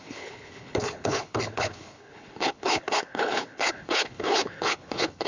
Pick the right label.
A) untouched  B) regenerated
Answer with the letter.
B